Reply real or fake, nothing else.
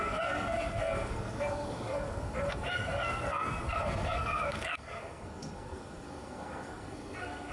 fake